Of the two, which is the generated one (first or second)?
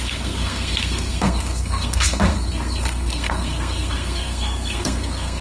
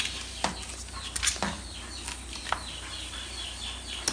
first